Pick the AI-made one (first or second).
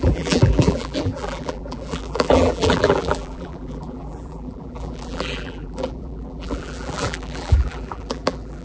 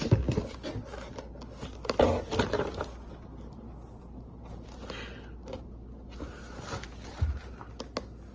first